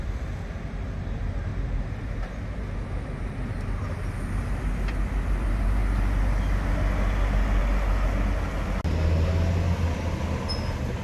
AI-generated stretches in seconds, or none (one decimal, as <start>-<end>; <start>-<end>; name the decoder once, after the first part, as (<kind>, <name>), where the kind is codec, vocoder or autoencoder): 1.5-2.7 (vocoder, BigVGAN v2)